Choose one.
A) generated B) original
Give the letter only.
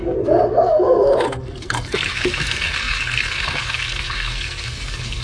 A